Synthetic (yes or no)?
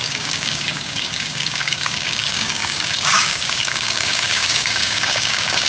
yes